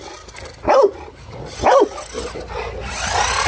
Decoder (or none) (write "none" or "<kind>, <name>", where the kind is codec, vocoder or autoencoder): none